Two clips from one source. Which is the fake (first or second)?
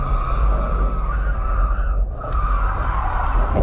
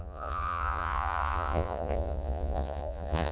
second